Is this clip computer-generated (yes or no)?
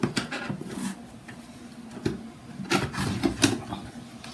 no